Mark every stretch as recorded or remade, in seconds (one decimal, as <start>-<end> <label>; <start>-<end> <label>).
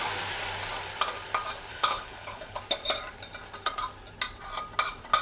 0.0-1.7 recorded; 1.7-2.6 remade; 2.6-5.2 recorded